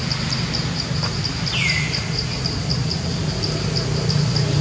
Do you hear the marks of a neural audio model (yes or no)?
no